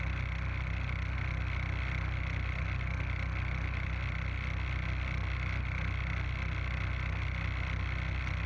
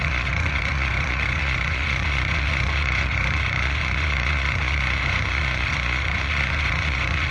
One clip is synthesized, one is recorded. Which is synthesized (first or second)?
second